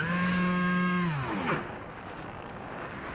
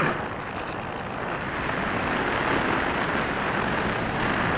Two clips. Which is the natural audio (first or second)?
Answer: second